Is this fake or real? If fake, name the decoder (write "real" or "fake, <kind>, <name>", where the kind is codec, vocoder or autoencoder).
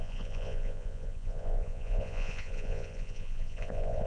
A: fake, vocoder, Vocos